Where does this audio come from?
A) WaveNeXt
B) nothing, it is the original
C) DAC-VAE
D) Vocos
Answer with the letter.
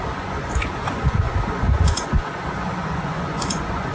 D